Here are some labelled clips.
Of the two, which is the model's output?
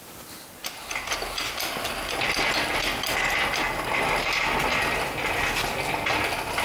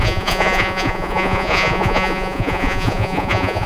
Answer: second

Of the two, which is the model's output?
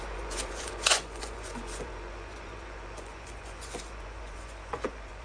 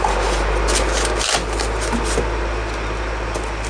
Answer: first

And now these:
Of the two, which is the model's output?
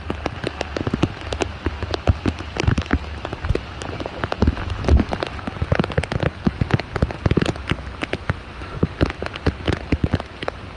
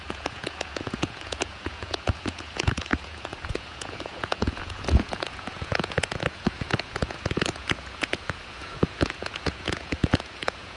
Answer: second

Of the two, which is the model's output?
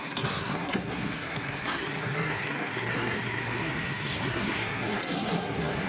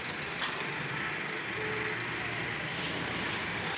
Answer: first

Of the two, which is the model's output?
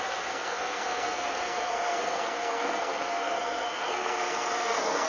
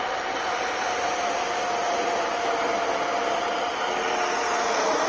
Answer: first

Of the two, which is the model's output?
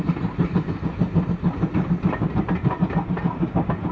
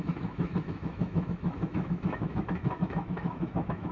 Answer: second